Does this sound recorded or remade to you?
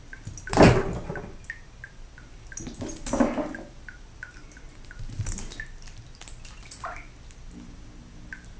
recorded